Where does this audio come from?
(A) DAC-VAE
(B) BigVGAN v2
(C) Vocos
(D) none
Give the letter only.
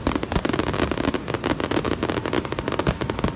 D